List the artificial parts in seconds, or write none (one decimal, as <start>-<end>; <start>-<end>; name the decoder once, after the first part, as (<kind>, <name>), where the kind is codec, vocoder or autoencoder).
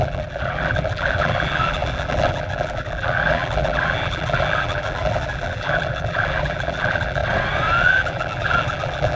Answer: 0.0-7.2 (vocoder, BigVGAN v2); 7.8-9.2